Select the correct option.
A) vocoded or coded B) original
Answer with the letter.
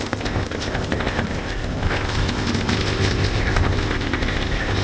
A